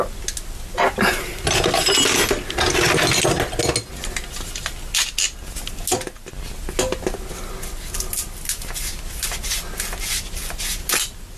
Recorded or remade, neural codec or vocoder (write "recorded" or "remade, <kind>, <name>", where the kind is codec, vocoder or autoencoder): recorded